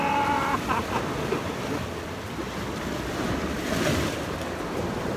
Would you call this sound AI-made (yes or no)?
no